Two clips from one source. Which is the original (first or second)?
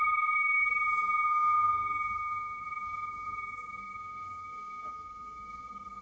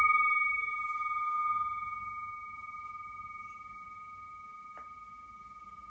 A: second